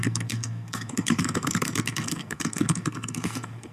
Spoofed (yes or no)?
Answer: yes